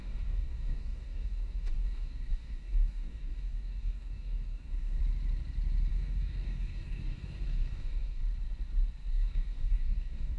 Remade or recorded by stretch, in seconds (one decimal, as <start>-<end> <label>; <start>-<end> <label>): 0.0-5.0 remade; 5.0-5.9 recorded; 5.9-8.2 remade; 8.2-9.1 recorded; 9.1-10.4 remade